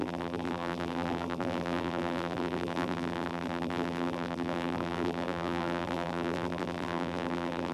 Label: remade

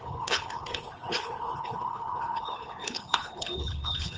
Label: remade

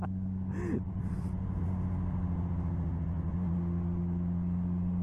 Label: recorded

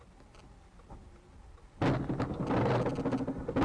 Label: recorded